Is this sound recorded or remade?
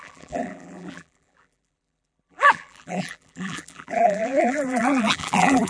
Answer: remade